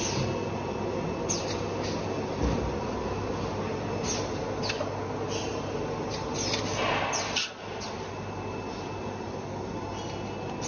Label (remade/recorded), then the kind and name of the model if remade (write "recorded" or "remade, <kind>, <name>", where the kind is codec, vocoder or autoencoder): recorded